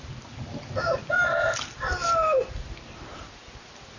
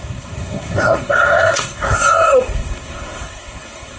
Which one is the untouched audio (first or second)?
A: first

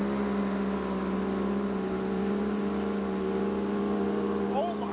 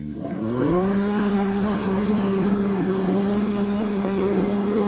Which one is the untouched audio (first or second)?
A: first